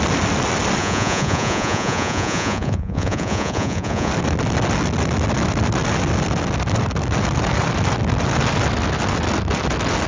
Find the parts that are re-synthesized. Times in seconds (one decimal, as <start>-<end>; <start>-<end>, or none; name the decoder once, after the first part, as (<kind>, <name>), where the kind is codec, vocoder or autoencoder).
0.8-4.1 (vocoder, Vocos)